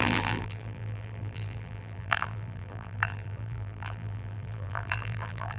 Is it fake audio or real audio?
fake